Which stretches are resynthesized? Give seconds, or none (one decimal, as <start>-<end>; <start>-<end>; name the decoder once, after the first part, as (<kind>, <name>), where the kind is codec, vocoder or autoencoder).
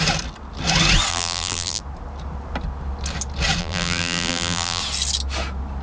1.1-1.8 (vocoder, BigVGAN v2); 3.6-4.8